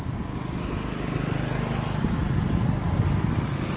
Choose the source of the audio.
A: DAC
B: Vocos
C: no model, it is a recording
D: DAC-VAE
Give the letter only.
C